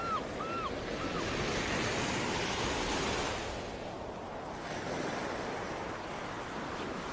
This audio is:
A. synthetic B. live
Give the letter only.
B